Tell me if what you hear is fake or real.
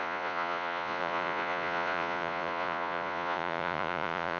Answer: fake